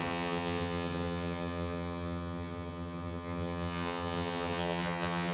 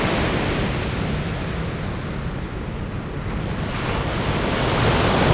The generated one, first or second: first